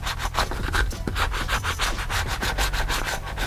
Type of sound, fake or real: real